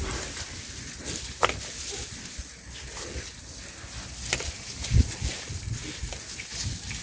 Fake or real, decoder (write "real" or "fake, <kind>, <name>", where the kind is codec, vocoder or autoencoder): real